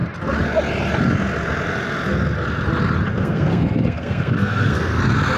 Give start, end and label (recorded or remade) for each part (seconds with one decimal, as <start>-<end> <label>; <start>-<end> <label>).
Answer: 0.0-3.1 recorded; 3.1-5.0 remade; 5.0-5.4 recorded